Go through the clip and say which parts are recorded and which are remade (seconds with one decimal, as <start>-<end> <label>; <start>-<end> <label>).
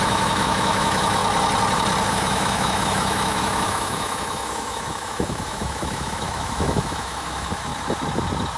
0.0-1.2 remade; 1.2-2.1 recorded; 2.1-7.7 remade; 7.7-8.6 recorded